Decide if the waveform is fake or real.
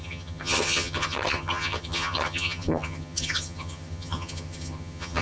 fake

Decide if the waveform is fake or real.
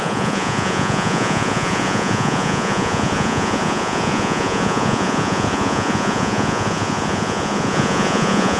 fake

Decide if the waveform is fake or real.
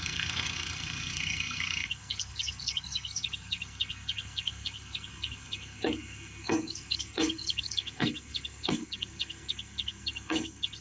fake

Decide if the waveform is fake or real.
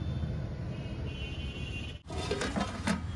real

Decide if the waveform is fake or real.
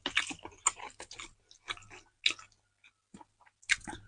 real